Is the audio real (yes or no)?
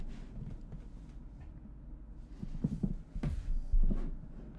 yes